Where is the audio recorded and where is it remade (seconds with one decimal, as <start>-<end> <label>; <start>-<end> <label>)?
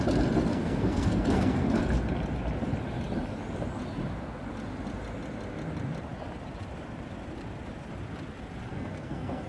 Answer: 0.0-0.5 recorded; 0.5-1.8 remade; 1.8-8.7 recorded; 8.7-9.5 remade